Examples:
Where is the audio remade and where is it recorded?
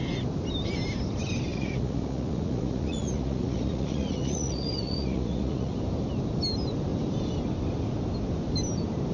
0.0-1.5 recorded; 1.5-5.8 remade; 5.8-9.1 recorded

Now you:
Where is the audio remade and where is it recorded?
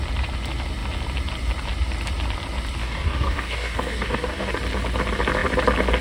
0.0-2.8 recorded; 2.8-4.5 remade; 4.5-6.0 recorded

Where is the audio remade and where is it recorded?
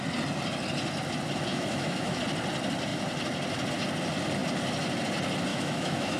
0.0-1.5 recorded; 1.5-2.2 remade; 2.2-5.5 recorded; 5.5-6.2 remade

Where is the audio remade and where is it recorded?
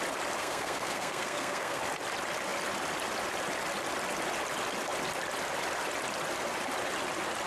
0.0-0.4 recorded; 0.4-1.8 remade; 1.8-7.5 recorded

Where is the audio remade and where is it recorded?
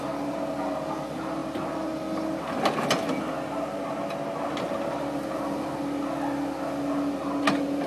0.0-7.9 recorded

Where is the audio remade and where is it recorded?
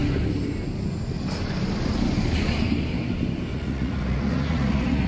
0.0-3.5 recorded; 3.5-5.1 remade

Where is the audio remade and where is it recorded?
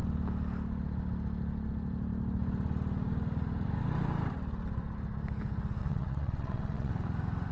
0.0-5.8 recorded; 5.8-6.9 remade; 6.9-7.5 recorded